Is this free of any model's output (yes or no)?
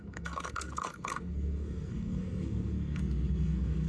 no